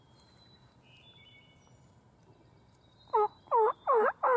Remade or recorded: recorded